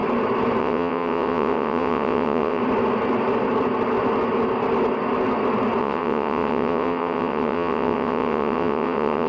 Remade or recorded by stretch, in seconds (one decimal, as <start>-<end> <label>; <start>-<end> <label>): 0.0-0.6 recorded; 0.6-2.6 remade; 2.6-5.8 recorded; 5.8-9.3 remade